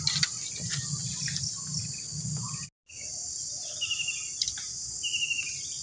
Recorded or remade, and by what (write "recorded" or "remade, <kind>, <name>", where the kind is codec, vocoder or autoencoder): recorded